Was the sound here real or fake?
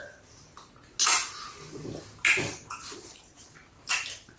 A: real